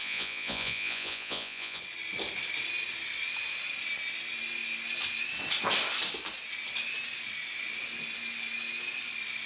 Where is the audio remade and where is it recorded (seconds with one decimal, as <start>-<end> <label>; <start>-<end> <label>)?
0.0-1.8 remade; 1.8-9.5 recorded